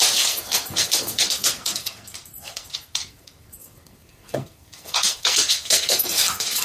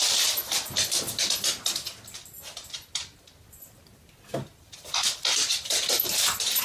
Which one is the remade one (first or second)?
first